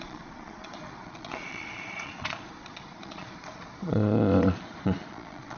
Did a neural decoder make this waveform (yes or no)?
yes